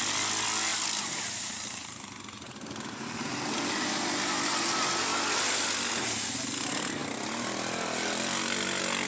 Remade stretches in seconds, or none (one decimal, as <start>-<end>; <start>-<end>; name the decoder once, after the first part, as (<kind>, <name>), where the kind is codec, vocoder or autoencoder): none